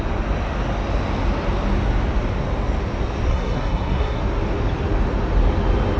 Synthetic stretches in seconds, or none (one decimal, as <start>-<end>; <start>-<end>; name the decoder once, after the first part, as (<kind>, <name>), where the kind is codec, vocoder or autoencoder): 3.3-4.2 (codec, SNAC)